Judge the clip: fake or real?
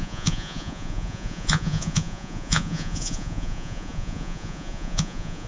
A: fake